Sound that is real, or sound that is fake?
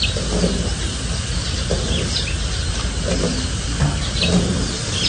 real